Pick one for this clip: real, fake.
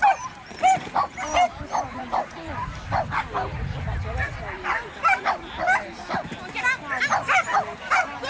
fake